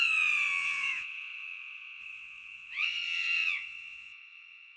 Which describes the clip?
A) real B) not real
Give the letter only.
B